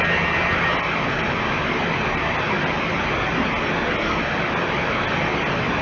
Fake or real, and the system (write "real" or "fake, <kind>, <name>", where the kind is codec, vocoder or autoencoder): real